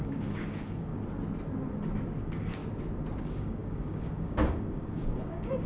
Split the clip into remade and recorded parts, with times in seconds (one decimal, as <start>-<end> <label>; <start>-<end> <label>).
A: 0.0-0.9 remade; 0.9-2.2 recorded; 2.2-2.6 remade; 2.6-3.2 recorded; 3.2-5.7 remade

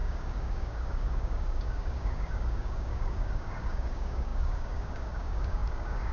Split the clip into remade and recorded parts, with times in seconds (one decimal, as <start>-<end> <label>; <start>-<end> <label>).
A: 0.0-6.1 remade

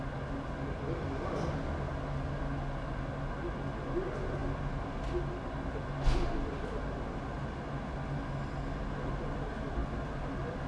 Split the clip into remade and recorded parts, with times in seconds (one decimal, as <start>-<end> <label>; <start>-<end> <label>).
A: 0.0-10.7 recorded